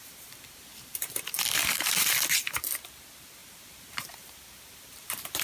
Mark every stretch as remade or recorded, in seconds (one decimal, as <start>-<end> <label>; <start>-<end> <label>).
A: 0.0-0.7 recorded; 0.7-1.2 remade; 1.2-1.6 recorded; 1.6-2.2 remade; 2.2-3.4 recorded; 3.4-5.4 remade